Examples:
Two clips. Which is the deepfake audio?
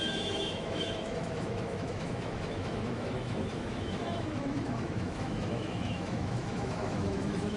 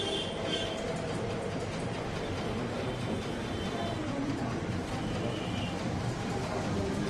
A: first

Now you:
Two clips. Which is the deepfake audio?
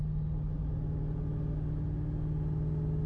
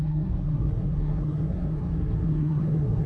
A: second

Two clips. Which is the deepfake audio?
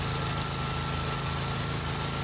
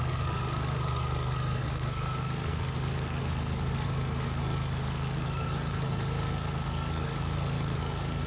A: second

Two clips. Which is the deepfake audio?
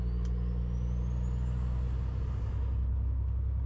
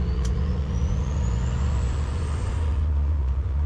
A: second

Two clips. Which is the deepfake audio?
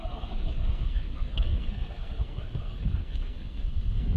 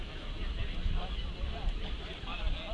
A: first